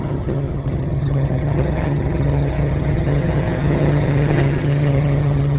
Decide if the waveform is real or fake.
fake